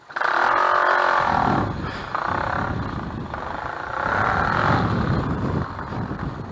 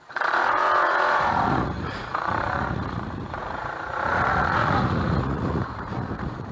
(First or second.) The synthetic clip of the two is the second